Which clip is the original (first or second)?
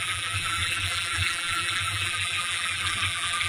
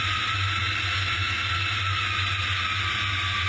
second